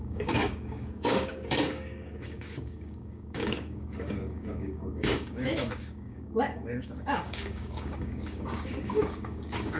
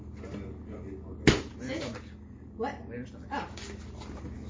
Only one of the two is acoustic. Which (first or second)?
second